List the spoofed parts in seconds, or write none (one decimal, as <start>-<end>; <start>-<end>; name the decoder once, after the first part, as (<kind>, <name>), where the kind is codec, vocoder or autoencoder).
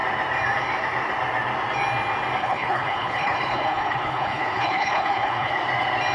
2.4-5.5 (codec, HILCodec)